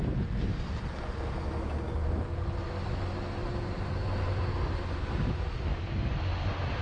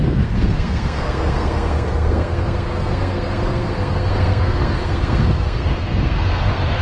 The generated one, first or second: second